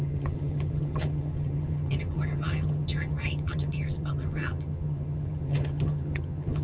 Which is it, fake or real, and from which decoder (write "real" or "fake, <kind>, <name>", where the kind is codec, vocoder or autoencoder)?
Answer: fake, vocoder, HiFi-GAN